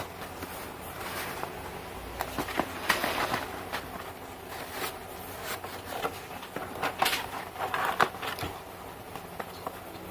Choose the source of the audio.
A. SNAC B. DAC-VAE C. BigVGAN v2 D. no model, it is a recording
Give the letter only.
D